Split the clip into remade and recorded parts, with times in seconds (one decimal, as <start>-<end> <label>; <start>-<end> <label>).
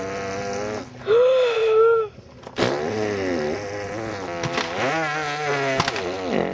0.0-6.5 recorded